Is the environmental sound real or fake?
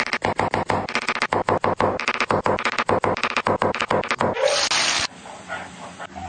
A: real